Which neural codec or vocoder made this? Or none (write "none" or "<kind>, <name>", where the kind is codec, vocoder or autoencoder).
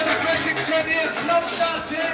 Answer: none